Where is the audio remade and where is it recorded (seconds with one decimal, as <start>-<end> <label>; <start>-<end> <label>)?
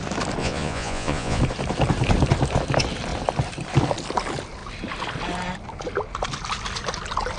0.0-0.4 recorded; 0.4-1.4 remade; 1.4-7.4 recorded